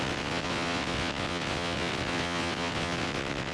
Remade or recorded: remade